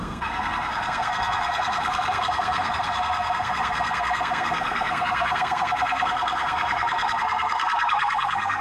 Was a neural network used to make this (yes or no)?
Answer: yes